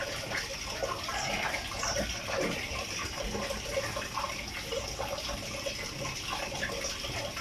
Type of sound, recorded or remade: recorded